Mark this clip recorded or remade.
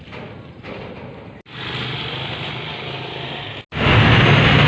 recorded